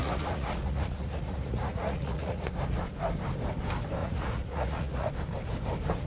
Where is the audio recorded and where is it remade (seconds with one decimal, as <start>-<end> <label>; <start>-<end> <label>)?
0.0-2.5 remade; 2.5-4.0 recorded; 4.0-5.1 remade; 5.1-6.1 recorded